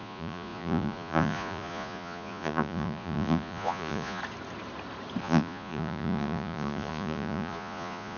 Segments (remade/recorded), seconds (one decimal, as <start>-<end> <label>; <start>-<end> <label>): 0.0-4.2 remade; 4.2-5.2 recorded; 5.2-8.2 remade